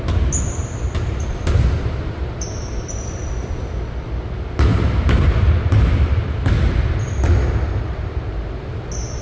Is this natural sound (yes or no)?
yes